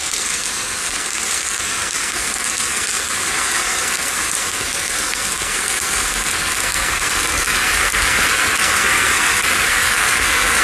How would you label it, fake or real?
fake